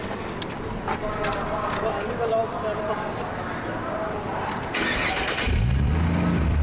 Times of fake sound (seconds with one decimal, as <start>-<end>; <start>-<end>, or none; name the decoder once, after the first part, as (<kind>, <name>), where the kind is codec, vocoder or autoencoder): none